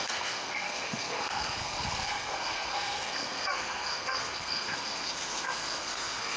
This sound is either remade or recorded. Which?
remade